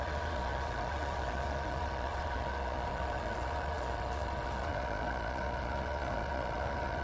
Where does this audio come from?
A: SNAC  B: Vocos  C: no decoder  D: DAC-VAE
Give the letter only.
B